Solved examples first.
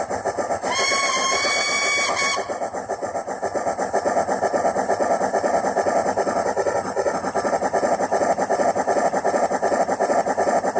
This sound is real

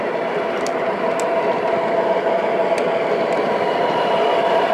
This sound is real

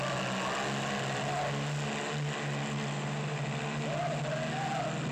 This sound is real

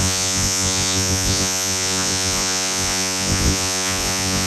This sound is fake